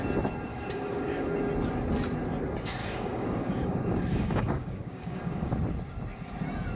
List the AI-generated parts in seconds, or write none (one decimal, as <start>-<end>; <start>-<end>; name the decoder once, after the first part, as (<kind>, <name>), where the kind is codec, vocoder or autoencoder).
0.5-1.5 (codec, DAC); 2.8-5.5